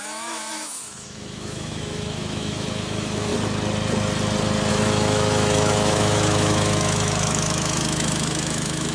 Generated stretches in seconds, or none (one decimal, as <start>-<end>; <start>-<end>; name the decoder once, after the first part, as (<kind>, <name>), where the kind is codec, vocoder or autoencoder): 0.0-3.3 (autoencoder, DAC-VAE); 4.7-8.9